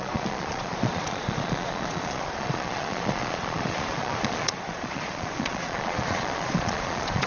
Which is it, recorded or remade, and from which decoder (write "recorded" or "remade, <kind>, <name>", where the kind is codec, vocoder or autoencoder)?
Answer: remade, vocoder, Vocos